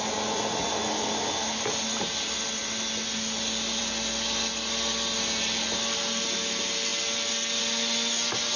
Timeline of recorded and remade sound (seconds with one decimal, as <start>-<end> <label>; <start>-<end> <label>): 0.0-8.6 recorded